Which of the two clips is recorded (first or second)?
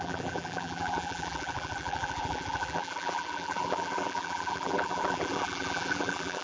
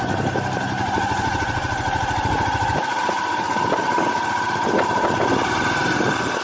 second